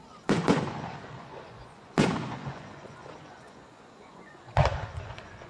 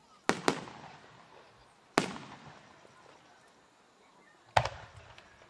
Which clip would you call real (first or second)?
second